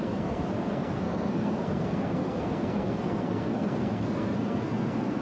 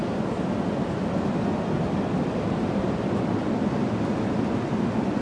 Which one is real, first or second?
second